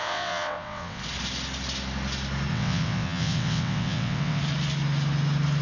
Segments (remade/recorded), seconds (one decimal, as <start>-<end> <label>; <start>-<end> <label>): 0.0-1.0 remade; 1.0-2.5 recorded; 2.5-4.4 remade; 4.4-5.6 recorded